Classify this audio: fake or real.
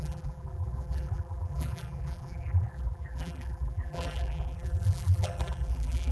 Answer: fake